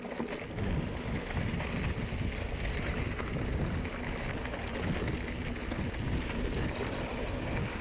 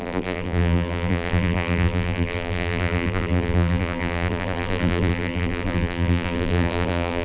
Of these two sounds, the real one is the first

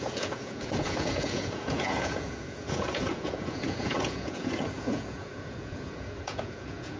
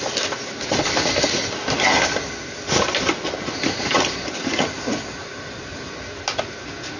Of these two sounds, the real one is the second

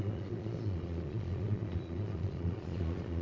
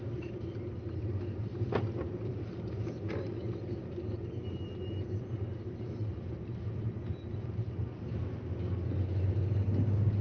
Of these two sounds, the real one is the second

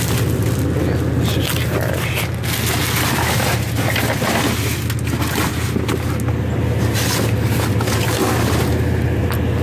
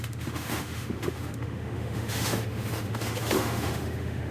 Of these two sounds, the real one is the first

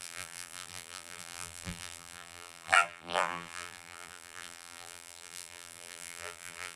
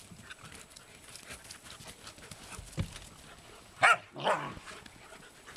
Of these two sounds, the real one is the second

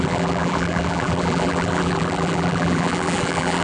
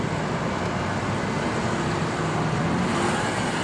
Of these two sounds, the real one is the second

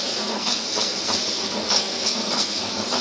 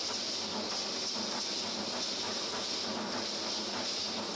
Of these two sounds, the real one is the second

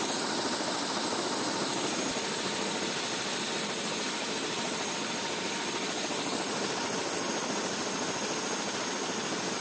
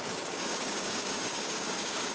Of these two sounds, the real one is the first